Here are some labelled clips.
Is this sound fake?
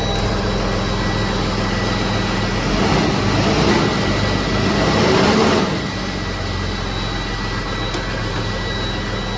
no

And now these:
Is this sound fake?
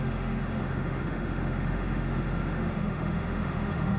yes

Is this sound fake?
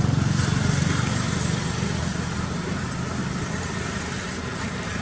no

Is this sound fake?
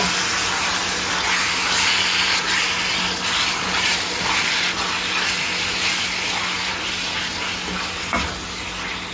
no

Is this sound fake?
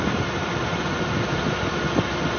no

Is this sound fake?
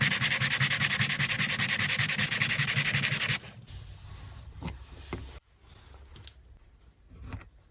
no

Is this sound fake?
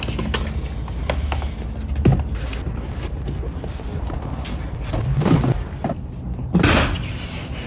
no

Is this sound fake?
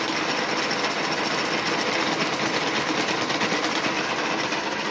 no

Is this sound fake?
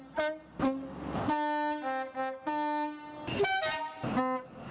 no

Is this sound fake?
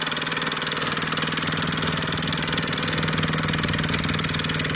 no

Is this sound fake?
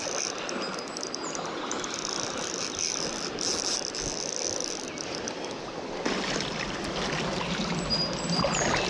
no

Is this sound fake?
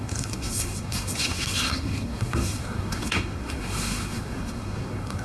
yes